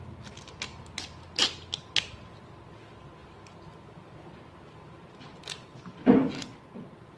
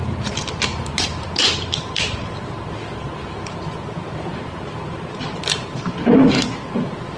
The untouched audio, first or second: first